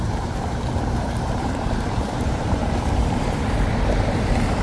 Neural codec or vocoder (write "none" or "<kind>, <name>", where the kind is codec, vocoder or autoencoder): vocoder, BigVGAN v2